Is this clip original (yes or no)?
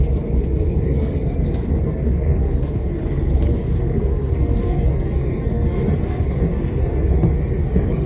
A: no